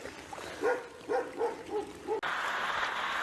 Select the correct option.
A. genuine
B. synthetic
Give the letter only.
A